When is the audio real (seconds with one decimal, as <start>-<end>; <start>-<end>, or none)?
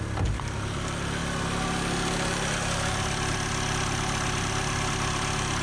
0.0-5.6